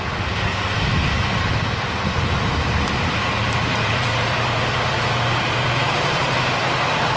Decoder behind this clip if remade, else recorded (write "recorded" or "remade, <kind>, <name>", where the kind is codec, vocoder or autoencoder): remade, vocoder, BigVGAN v2